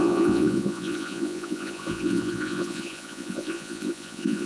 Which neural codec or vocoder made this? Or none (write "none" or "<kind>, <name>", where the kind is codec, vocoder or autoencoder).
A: vocoder, Vocos